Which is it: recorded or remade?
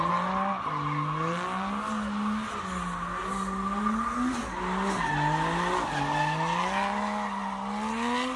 recorded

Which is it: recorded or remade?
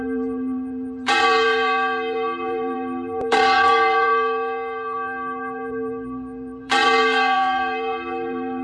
remade